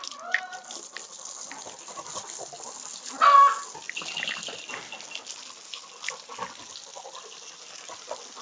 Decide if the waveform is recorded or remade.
recorded